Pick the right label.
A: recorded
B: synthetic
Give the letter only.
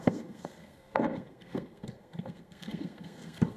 B